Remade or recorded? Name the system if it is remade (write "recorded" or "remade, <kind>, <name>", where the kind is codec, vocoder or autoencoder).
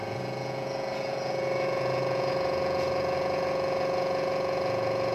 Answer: remade, vocoder, Vocos